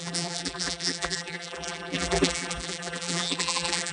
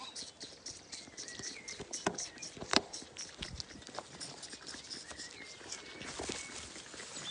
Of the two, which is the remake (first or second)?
first